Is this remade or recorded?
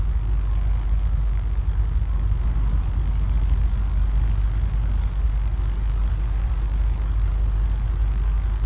remade